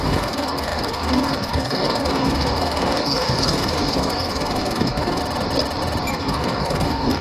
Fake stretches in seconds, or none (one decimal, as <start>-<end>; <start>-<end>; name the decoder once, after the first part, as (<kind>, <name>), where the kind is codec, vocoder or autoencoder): 0.0-5.2 (codec, DAC); 6.1-7.2